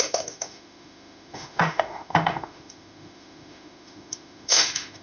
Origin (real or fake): fake